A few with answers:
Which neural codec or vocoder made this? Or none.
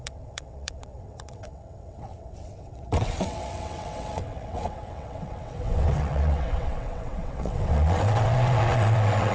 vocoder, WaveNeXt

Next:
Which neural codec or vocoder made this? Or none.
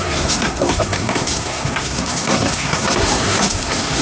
codec, SNAC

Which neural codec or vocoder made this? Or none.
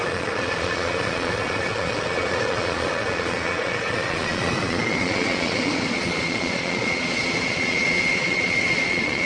vocoder, Vocos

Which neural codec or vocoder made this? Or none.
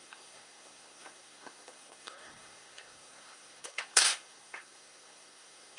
codec, SNAC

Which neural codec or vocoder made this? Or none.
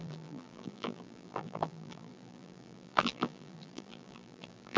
vocoder, BigVGAN v2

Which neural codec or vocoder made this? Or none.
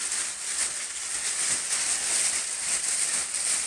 none